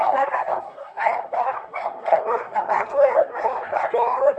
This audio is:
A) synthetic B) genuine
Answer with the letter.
A